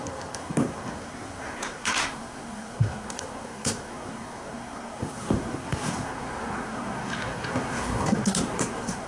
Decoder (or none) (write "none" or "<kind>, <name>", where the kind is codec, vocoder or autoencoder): codec, SNAC